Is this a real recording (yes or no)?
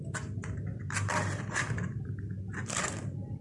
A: yes